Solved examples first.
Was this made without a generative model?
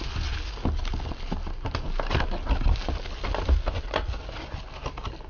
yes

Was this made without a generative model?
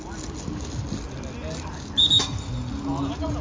yes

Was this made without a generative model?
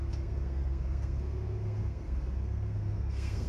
no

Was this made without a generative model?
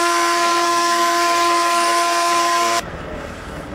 no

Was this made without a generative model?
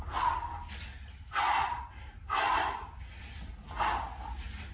yes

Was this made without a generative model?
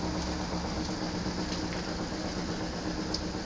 yes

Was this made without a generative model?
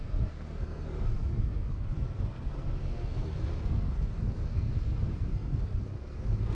no